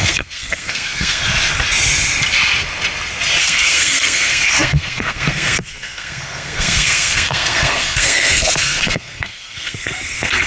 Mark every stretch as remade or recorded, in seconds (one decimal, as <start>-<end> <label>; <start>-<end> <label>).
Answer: 0.0-1.2 remade; 1.2-3.4 recorded; 3.4-10.5 remade